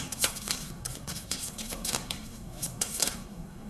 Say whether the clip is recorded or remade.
remade